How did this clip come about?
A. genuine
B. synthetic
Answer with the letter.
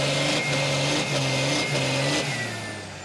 A